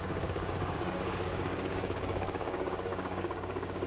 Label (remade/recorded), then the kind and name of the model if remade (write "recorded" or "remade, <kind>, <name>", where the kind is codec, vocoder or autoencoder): remade, codec, DAC